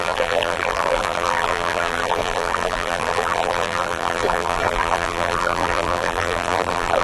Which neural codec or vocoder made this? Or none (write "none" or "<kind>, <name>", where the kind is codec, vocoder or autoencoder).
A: vocoder, BigVGAN v2